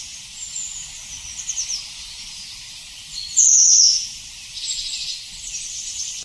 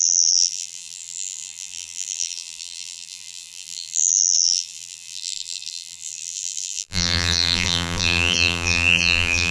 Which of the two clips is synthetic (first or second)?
second